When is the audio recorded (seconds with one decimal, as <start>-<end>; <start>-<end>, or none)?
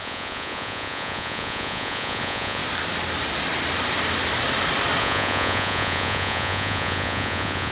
2.6-5.0